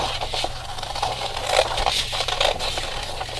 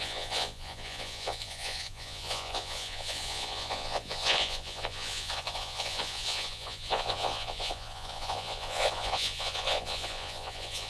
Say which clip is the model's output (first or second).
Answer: second